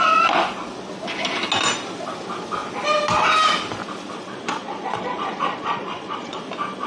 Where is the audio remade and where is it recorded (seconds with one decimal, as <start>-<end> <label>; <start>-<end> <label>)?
0.0-4.6 recorded; 4.6-6.4 remade; 6.4-6.9 recorded